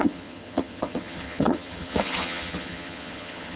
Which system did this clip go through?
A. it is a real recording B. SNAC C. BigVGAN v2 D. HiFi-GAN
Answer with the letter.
D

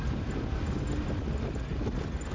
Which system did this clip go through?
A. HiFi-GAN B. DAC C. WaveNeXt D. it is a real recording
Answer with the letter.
D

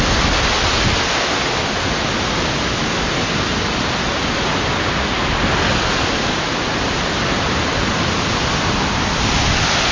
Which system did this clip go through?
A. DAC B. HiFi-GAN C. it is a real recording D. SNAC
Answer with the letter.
C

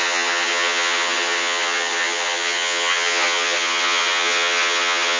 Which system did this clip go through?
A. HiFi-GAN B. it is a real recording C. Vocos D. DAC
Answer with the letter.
A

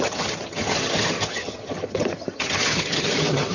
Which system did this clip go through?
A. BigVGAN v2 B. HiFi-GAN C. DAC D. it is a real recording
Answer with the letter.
B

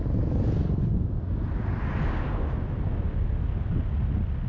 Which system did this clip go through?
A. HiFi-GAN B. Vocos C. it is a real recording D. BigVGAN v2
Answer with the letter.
C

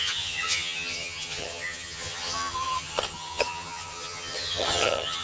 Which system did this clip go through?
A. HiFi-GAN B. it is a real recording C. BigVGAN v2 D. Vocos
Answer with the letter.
A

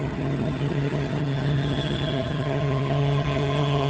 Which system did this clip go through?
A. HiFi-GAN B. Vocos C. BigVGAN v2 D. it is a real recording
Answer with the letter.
A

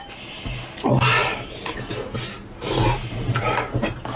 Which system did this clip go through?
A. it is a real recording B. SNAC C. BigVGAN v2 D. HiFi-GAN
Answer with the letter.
A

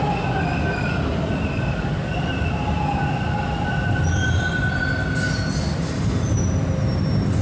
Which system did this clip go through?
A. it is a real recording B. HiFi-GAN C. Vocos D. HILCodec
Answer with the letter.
A